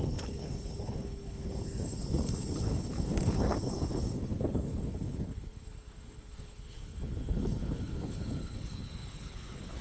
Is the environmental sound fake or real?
fake